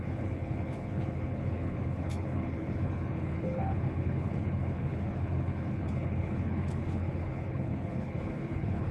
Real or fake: fake